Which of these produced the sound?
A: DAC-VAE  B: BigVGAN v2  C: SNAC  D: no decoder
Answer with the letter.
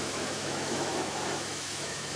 A